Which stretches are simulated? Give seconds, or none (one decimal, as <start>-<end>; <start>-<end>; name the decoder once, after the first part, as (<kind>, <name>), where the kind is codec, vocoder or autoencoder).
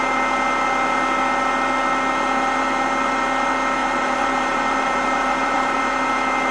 3.8-5.8 (vocoder, BigVGAN v2)